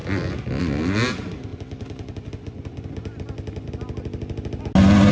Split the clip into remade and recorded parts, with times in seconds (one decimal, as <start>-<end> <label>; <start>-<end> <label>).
0.0-5.1 recorded